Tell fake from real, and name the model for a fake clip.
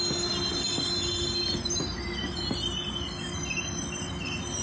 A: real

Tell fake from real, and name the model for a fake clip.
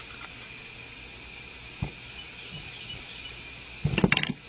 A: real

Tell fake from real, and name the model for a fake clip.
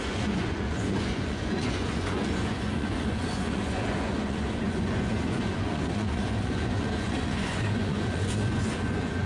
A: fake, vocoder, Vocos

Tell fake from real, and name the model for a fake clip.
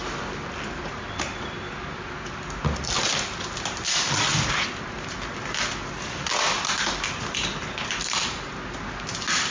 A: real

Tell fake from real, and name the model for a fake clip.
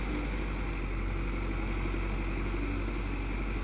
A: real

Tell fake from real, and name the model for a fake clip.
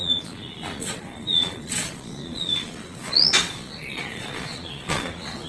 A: fake, vocoder, Vocos